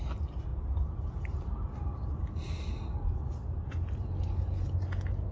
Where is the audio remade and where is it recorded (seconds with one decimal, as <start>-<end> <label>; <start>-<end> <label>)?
0.0-5.3 recorded